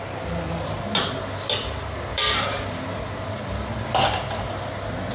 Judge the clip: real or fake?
real